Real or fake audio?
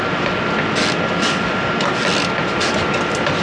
real